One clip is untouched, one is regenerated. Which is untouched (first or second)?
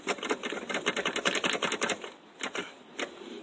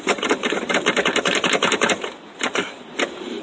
first